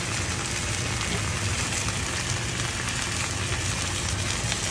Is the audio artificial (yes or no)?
no